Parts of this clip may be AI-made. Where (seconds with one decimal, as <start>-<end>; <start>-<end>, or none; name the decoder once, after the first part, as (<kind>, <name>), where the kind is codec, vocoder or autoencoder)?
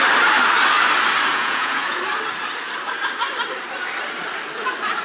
1.3-2.0 (vocoder, Vocos)